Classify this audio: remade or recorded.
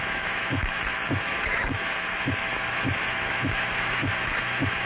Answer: remade